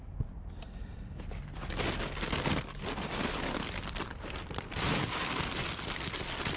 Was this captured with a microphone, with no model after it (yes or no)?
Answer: yes